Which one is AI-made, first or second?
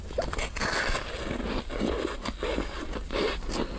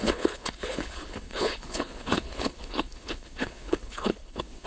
second